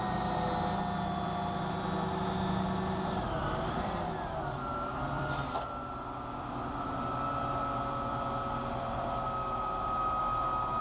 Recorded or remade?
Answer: recorded